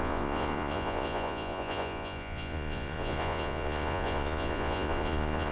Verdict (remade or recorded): remade